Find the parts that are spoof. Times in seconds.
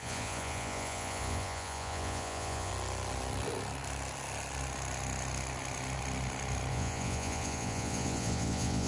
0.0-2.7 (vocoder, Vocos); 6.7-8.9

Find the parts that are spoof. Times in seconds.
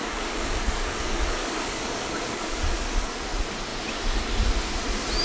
0.0-3.1 (codec, DAC)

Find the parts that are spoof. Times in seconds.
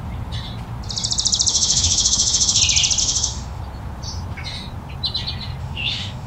1.5-2.6 (autoencoder, DAC-VAE); 3.0-3.6; 5.6-6.3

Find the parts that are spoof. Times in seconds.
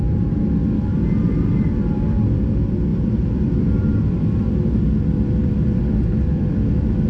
0.9-2.2 (vocoder, BigVGAN v2); 2.9-6.4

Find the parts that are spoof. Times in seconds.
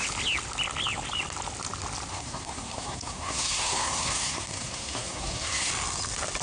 2.1-5.7 (codec, SNAC)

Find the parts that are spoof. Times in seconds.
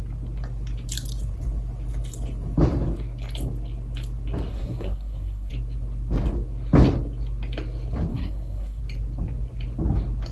4.5-5.5 (codec, SNAC); 8.1-8.8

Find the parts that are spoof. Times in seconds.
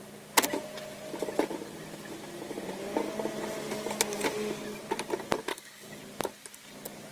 5.5-6.0 (codec, DAC)